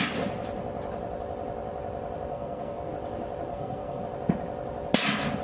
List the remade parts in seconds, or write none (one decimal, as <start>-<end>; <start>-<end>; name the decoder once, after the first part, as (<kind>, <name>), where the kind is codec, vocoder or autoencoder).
2.3-2.9 (codec, SNAC); 3.5-4.0